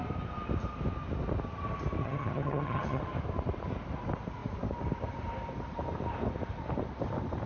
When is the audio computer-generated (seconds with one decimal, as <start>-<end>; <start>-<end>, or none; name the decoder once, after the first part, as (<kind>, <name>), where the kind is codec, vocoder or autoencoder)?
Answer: 2.0-3.0 (vocoder, HiFi-GAN)